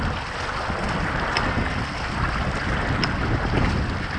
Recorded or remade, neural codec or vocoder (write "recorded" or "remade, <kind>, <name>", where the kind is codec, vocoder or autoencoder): recorded